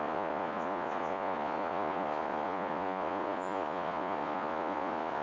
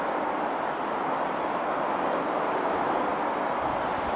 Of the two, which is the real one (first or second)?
second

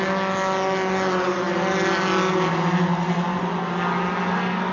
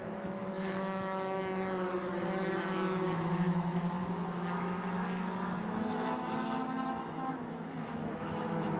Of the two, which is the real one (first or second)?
first